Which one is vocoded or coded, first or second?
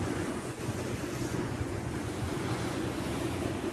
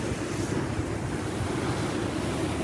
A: first